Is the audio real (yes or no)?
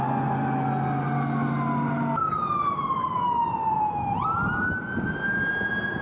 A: yes